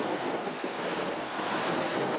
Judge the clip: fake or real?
fake